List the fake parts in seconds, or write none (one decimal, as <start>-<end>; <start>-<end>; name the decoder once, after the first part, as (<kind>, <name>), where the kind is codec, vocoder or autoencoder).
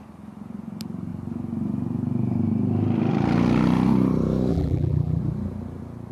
4.5-5.2 (vocoder, BigVGAN v2)